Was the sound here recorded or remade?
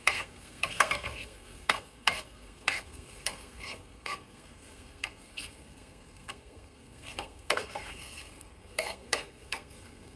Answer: remade